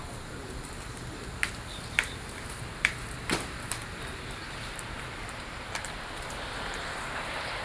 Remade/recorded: remade